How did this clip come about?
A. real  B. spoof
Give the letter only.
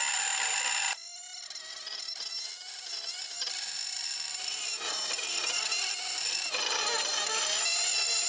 A